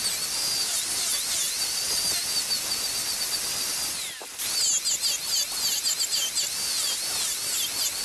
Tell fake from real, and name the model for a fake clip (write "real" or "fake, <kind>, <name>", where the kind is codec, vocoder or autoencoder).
real